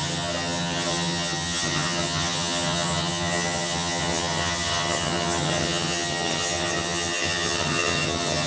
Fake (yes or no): yes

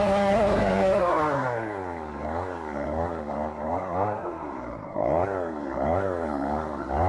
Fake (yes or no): yes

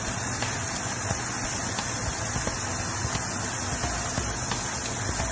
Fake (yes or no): no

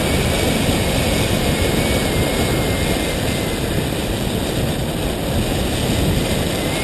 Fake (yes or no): no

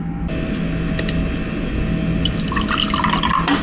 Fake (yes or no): no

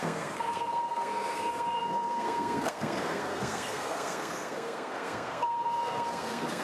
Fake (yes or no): yes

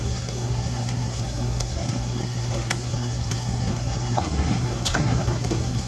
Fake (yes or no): yes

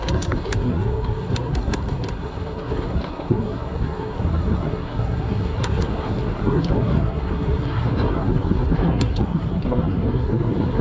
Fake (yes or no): yes